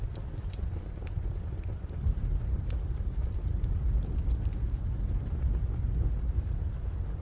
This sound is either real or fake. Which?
real